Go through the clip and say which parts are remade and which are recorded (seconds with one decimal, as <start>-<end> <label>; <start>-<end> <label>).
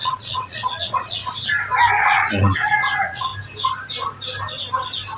0.0-1.2 remade; 1.2-2.0 recorded; 2.0-3.3 remade; 3.3-5.2 recorded